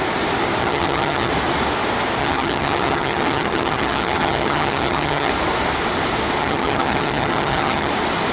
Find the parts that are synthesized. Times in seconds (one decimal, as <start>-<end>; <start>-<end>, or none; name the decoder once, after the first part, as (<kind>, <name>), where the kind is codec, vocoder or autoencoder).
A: 0.6-1.3 (vocoder, HiFi-GAN); 2.2-5.3; 6.4-7.9